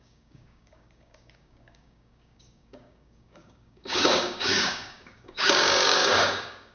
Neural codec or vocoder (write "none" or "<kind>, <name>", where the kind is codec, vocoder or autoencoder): codec, DAC